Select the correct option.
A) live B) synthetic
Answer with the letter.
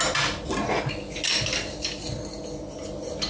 A